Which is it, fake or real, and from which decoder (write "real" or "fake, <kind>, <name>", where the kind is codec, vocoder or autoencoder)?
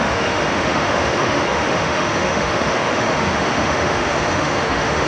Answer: fake, autoencoder, DAC-VAE